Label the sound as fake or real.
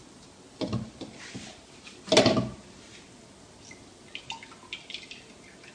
real